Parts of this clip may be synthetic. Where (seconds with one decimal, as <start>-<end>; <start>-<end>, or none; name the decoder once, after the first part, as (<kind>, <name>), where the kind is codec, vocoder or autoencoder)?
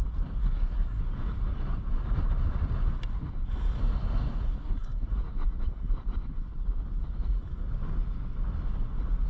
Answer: 0.4-1.0 (codec, SNAC); 4.6-5.1